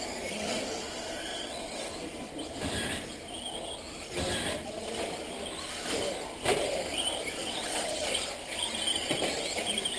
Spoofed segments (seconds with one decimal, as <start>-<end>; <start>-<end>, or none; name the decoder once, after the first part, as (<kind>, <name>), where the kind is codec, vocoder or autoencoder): 1.3-1.9 (vocoder, WaveNeXt); 7.4-7.9